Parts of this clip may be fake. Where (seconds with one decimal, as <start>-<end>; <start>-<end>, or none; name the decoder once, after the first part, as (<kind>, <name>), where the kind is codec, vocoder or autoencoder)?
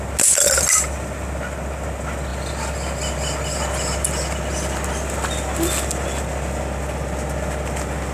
none